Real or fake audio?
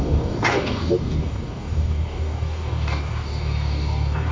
fake